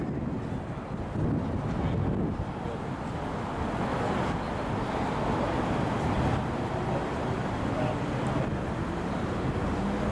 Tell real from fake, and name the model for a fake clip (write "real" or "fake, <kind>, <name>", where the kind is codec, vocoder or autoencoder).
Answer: real